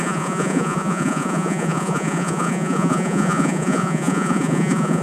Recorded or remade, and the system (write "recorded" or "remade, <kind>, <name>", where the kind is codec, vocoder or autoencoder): remade, vocoder, Vocos